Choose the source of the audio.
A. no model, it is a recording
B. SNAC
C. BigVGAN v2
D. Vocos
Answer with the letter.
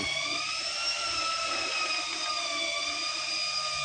A